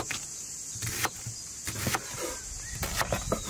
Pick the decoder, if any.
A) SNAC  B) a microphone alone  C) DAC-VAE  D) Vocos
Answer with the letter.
B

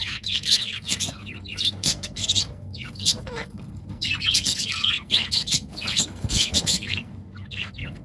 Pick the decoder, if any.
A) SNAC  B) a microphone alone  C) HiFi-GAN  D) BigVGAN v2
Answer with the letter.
A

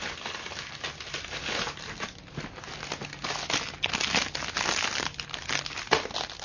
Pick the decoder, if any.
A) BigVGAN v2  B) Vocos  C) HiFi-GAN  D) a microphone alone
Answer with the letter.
D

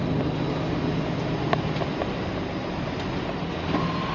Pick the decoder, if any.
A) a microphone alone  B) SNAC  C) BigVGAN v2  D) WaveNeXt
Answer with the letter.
A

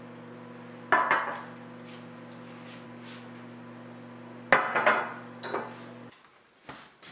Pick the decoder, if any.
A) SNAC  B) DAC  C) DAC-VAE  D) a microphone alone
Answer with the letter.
D